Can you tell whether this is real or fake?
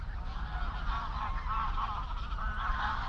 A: real